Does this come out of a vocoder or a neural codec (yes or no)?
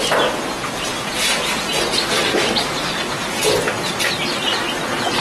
no